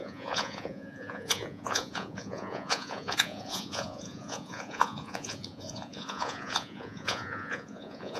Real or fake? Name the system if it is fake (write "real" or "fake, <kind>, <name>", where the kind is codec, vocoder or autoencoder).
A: fake, vocoder, Vocos